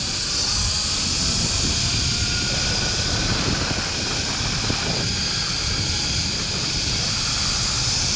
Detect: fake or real real